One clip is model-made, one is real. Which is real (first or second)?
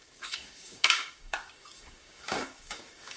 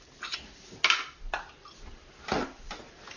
second